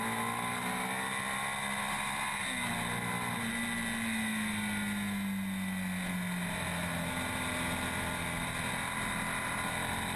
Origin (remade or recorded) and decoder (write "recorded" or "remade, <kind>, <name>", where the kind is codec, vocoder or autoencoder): recorded